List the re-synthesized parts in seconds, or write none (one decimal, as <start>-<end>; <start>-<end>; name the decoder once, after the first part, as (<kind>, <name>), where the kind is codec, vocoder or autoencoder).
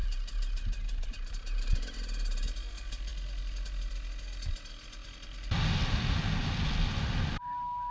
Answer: none